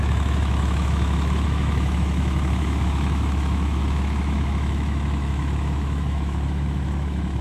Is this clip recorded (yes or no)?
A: no